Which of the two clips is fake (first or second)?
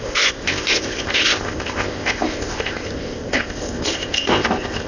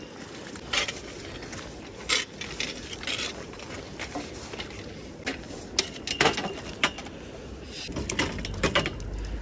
first